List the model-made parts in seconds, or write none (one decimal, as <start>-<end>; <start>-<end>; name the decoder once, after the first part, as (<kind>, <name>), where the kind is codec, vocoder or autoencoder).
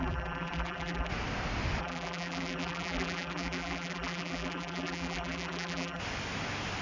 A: 0.0-1.1 (vocoder, BigVGAN v2); 1.8-6.0